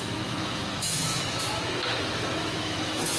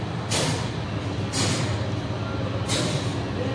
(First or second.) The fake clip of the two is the first